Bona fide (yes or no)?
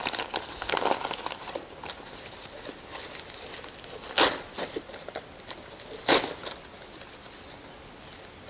yes